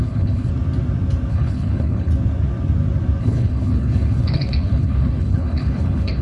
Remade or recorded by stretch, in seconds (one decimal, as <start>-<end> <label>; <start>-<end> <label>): 0.0-0.5 remade; 0.5-1.3 recorded; 1.3-2.1 remade; 2.1-3.2 recorded; 3.2-6.2 remade